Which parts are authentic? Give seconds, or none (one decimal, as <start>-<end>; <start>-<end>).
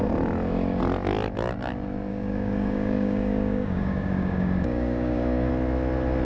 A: 0.0-2.1; 5.5-6.2